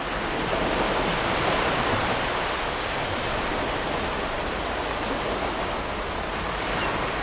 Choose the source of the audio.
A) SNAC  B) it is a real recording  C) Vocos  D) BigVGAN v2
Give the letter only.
B